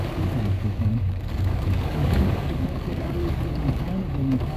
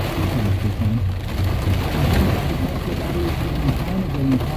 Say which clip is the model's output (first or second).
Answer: first